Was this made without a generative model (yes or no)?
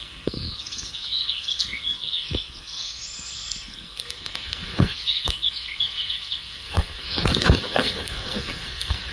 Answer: no